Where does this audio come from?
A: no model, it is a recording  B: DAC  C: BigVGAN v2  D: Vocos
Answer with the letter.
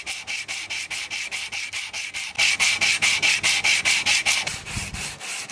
A